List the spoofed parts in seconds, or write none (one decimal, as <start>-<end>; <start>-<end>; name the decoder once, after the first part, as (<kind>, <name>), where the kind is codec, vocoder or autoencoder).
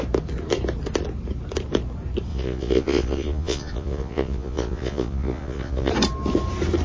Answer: 2.3-5.9 (vocoder, Vocos)